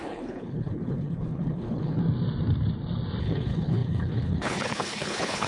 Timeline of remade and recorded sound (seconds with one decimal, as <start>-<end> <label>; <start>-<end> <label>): 0.0-2.0 remade; 2.0-3.2 recorded; 3.2-5.5 remade